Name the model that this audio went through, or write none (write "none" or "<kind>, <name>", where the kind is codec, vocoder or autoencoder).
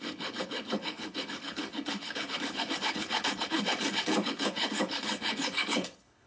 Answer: codec, HILCodec